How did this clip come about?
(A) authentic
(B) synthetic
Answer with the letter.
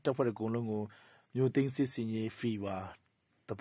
A